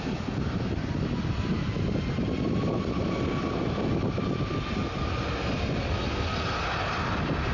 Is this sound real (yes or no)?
yes